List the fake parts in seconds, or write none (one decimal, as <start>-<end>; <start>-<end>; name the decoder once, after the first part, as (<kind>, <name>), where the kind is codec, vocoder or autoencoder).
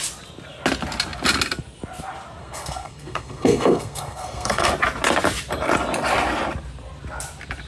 2.4-4.7 (codec, SNAC)